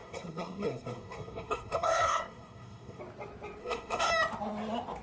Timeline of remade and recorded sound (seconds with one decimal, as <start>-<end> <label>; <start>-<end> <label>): 0.0-3.0 remade; 3.0-3.6 recorded; 3.6-4.1 remade; 4.1-5.0 recorded